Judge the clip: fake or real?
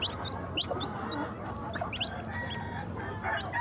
real